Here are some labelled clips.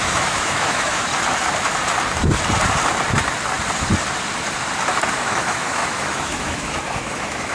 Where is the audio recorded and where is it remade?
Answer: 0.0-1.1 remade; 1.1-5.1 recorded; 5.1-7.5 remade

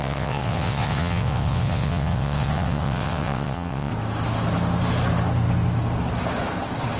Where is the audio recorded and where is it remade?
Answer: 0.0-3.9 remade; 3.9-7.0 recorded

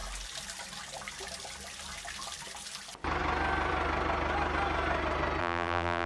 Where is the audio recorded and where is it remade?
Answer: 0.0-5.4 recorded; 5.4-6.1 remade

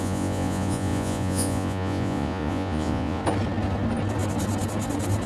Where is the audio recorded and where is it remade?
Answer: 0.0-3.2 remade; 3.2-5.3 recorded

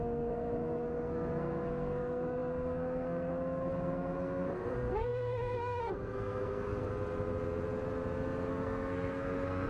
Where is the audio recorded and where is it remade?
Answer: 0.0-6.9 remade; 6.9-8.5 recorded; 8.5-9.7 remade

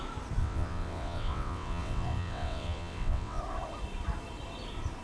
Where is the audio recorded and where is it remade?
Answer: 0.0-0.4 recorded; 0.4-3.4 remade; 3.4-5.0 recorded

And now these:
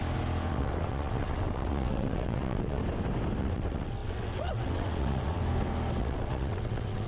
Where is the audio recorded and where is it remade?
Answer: 0.0-0.5 recorded; 0.5-2.8 remade; 2.8-3.4 recorded; 3.4-5.4 remade; 5.4-6.0 recorded; 6.0-7.1 remade